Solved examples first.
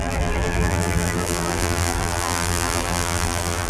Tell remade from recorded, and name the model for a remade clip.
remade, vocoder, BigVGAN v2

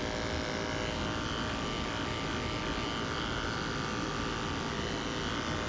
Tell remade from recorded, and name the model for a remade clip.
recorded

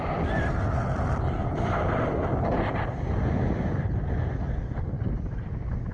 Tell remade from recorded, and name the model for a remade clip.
recorded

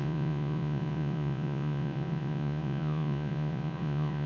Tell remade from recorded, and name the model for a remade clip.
remade, vocoder, Vocos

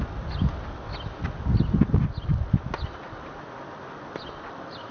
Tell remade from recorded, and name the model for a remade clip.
recorded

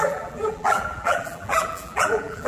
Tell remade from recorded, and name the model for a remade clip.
remade, vocoder, BigVGAN v2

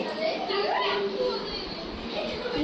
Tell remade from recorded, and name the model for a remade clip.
recorded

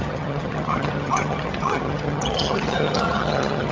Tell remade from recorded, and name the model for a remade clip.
remade, vocoder, HiFi-GAN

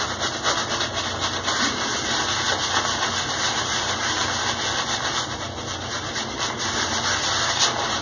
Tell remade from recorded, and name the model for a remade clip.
recorded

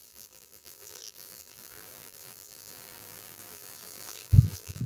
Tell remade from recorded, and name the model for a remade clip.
remade, vocoder, BigVGAN v2